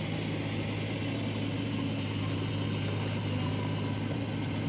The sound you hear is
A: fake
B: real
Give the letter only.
B